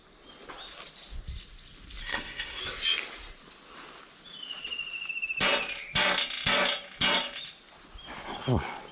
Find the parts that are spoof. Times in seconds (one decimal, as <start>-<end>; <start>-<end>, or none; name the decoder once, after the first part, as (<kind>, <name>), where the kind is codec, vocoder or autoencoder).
2.0-2.6 (codec, SNAC)